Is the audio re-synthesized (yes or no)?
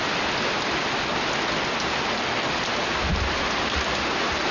no